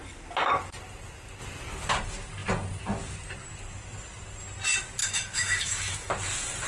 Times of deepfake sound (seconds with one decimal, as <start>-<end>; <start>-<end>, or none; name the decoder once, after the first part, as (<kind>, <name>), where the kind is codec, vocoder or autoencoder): 5.0-6.1 (autoencoder, DAC-VAE)